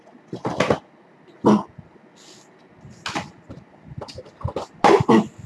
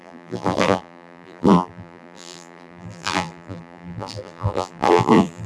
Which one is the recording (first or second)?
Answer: first